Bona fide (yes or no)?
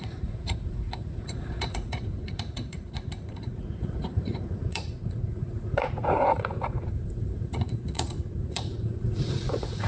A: no